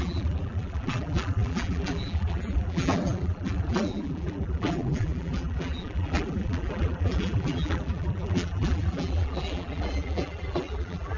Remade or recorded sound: remade